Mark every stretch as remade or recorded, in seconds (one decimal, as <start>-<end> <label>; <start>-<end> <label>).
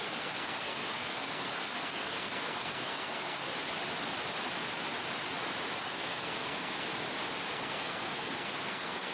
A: 0.0-3.5 remade; 3.5-5.8 recorded; 5.8-6.9 remade; 6.9-7.5 recorded; 7.5-9.1 remade